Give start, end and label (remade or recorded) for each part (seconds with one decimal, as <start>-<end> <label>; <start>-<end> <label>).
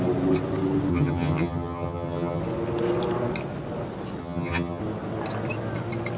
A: 0.0-0.9 recorded; 0.9-2.4 remade; 2.4-4.2 recorded; 4.2-4.8 remade; 4.8-6.2 recorded